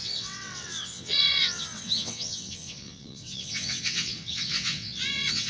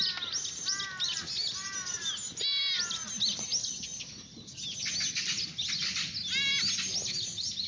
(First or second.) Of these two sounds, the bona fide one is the second